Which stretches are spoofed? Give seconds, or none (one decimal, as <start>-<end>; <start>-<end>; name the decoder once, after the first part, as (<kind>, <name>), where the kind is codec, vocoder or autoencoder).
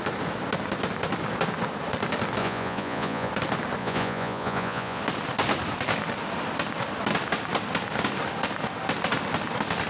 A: 2.4-3.3 (vocoder, Vocos); 3.8-5.0